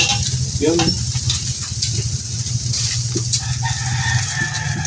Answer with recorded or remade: recorded